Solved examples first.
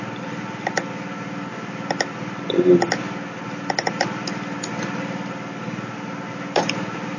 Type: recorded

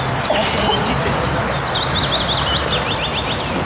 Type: recorded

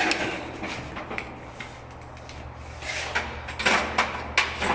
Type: recorded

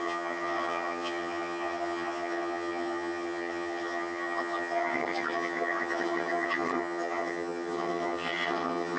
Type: remade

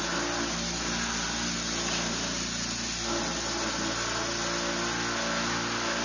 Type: recorded